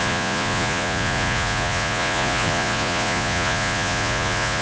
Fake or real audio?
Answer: fake